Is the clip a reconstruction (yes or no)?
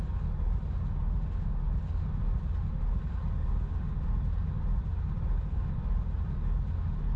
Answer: no